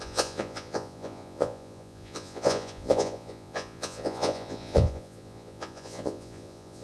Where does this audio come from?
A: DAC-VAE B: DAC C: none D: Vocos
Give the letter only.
D